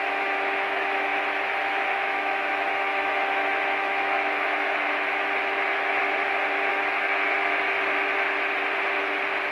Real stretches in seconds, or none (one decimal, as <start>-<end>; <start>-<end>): 6.0-6.7; 7.4-9.5